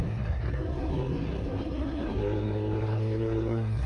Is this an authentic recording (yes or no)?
no